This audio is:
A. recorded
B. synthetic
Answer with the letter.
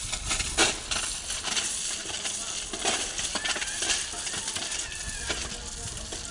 A